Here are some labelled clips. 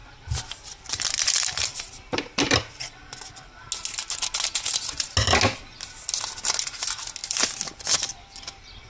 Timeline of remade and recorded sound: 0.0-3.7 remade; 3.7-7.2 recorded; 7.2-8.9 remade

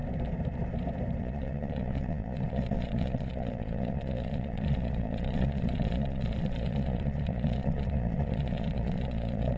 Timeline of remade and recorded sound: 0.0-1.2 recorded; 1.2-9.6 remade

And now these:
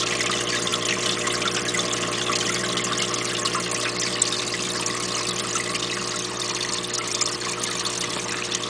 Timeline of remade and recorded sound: 0.0-8.7 recorded

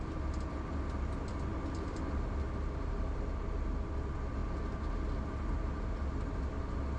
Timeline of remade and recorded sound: 0.0-7.0 recorded

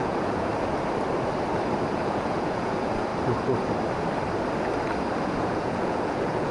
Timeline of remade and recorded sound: 0.0-0.5 remade; 0.5-1.9 recorded; 1.9-3.1 remade; 3.1-5.2 recorded; 5.2-6.5 remade

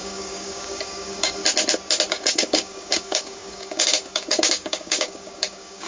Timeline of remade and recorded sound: 0.0-1.4 remade; 1.4-2.1 recorded; 2.1-5.9 remade